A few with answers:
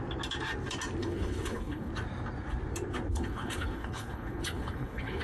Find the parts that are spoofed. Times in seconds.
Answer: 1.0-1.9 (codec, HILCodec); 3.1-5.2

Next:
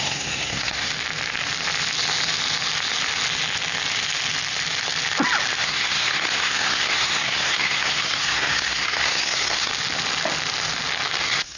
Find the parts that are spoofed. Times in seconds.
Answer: 0.0-0.9 (codec, SNAC); 5.6-9.7; 11.2-11.6

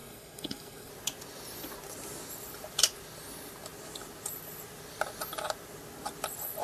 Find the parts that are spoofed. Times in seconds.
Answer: 0.0-0.9 (codec, SNAC)